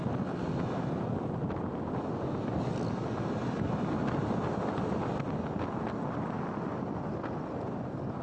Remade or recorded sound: recorded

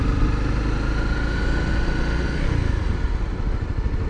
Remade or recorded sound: recorded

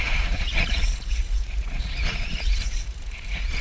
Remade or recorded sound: remade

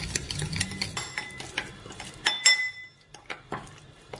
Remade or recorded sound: recorded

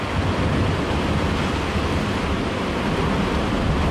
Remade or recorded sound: recorded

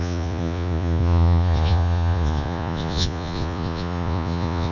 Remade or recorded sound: remade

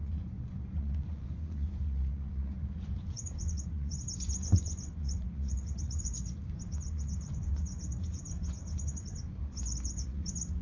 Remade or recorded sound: remade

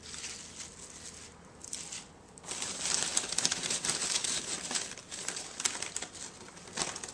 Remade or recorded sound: recorded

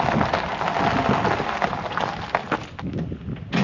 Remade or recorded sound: recorded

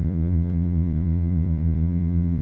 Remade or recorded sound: remade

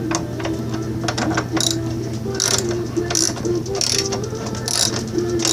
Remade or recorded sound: recorded